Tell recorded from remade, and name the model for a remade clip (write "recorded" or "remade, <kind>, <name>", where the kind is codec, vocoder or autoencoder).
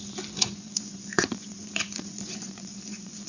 remade, vocoder, Vocos